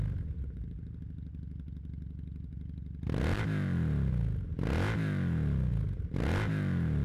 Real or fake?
real